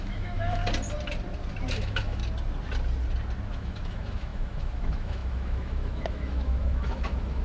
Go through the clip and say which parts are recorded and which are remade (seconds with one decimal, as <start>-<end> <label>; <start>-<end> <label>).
0.0-0.6 remade; 0.6-1.7 recorded; 1.7-2.2 remade; 2.2-3.5 recorded; 3.5-7.4 remade